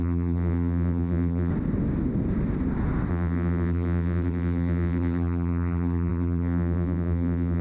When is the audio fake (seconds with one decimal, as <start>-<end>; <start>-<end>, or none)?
0.0-1.5; 3.1-7.6